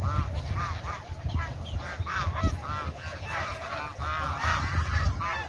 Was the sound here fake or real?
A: real